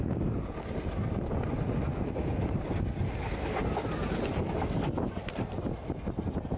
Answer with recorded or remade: recorded